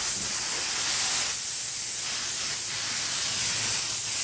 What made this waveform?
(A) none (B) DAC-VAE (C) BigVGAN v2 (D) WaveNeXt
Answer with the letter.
A